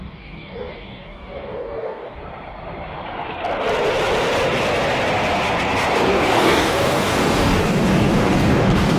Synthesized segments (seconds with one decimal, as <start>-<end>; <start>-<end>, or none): 0.0-2.2; 5.9-9.0